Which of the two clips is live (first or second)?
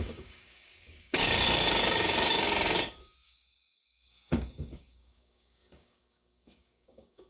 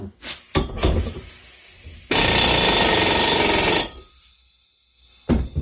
second